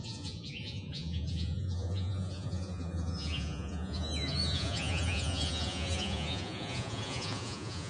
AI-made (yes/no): yes